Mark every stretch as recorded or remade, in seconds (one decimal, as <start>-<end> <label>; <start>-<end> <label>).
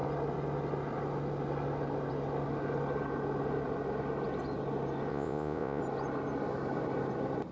0.0-5.1 recorded; 5.1-5.8 remade; 5.8-7.5 recorded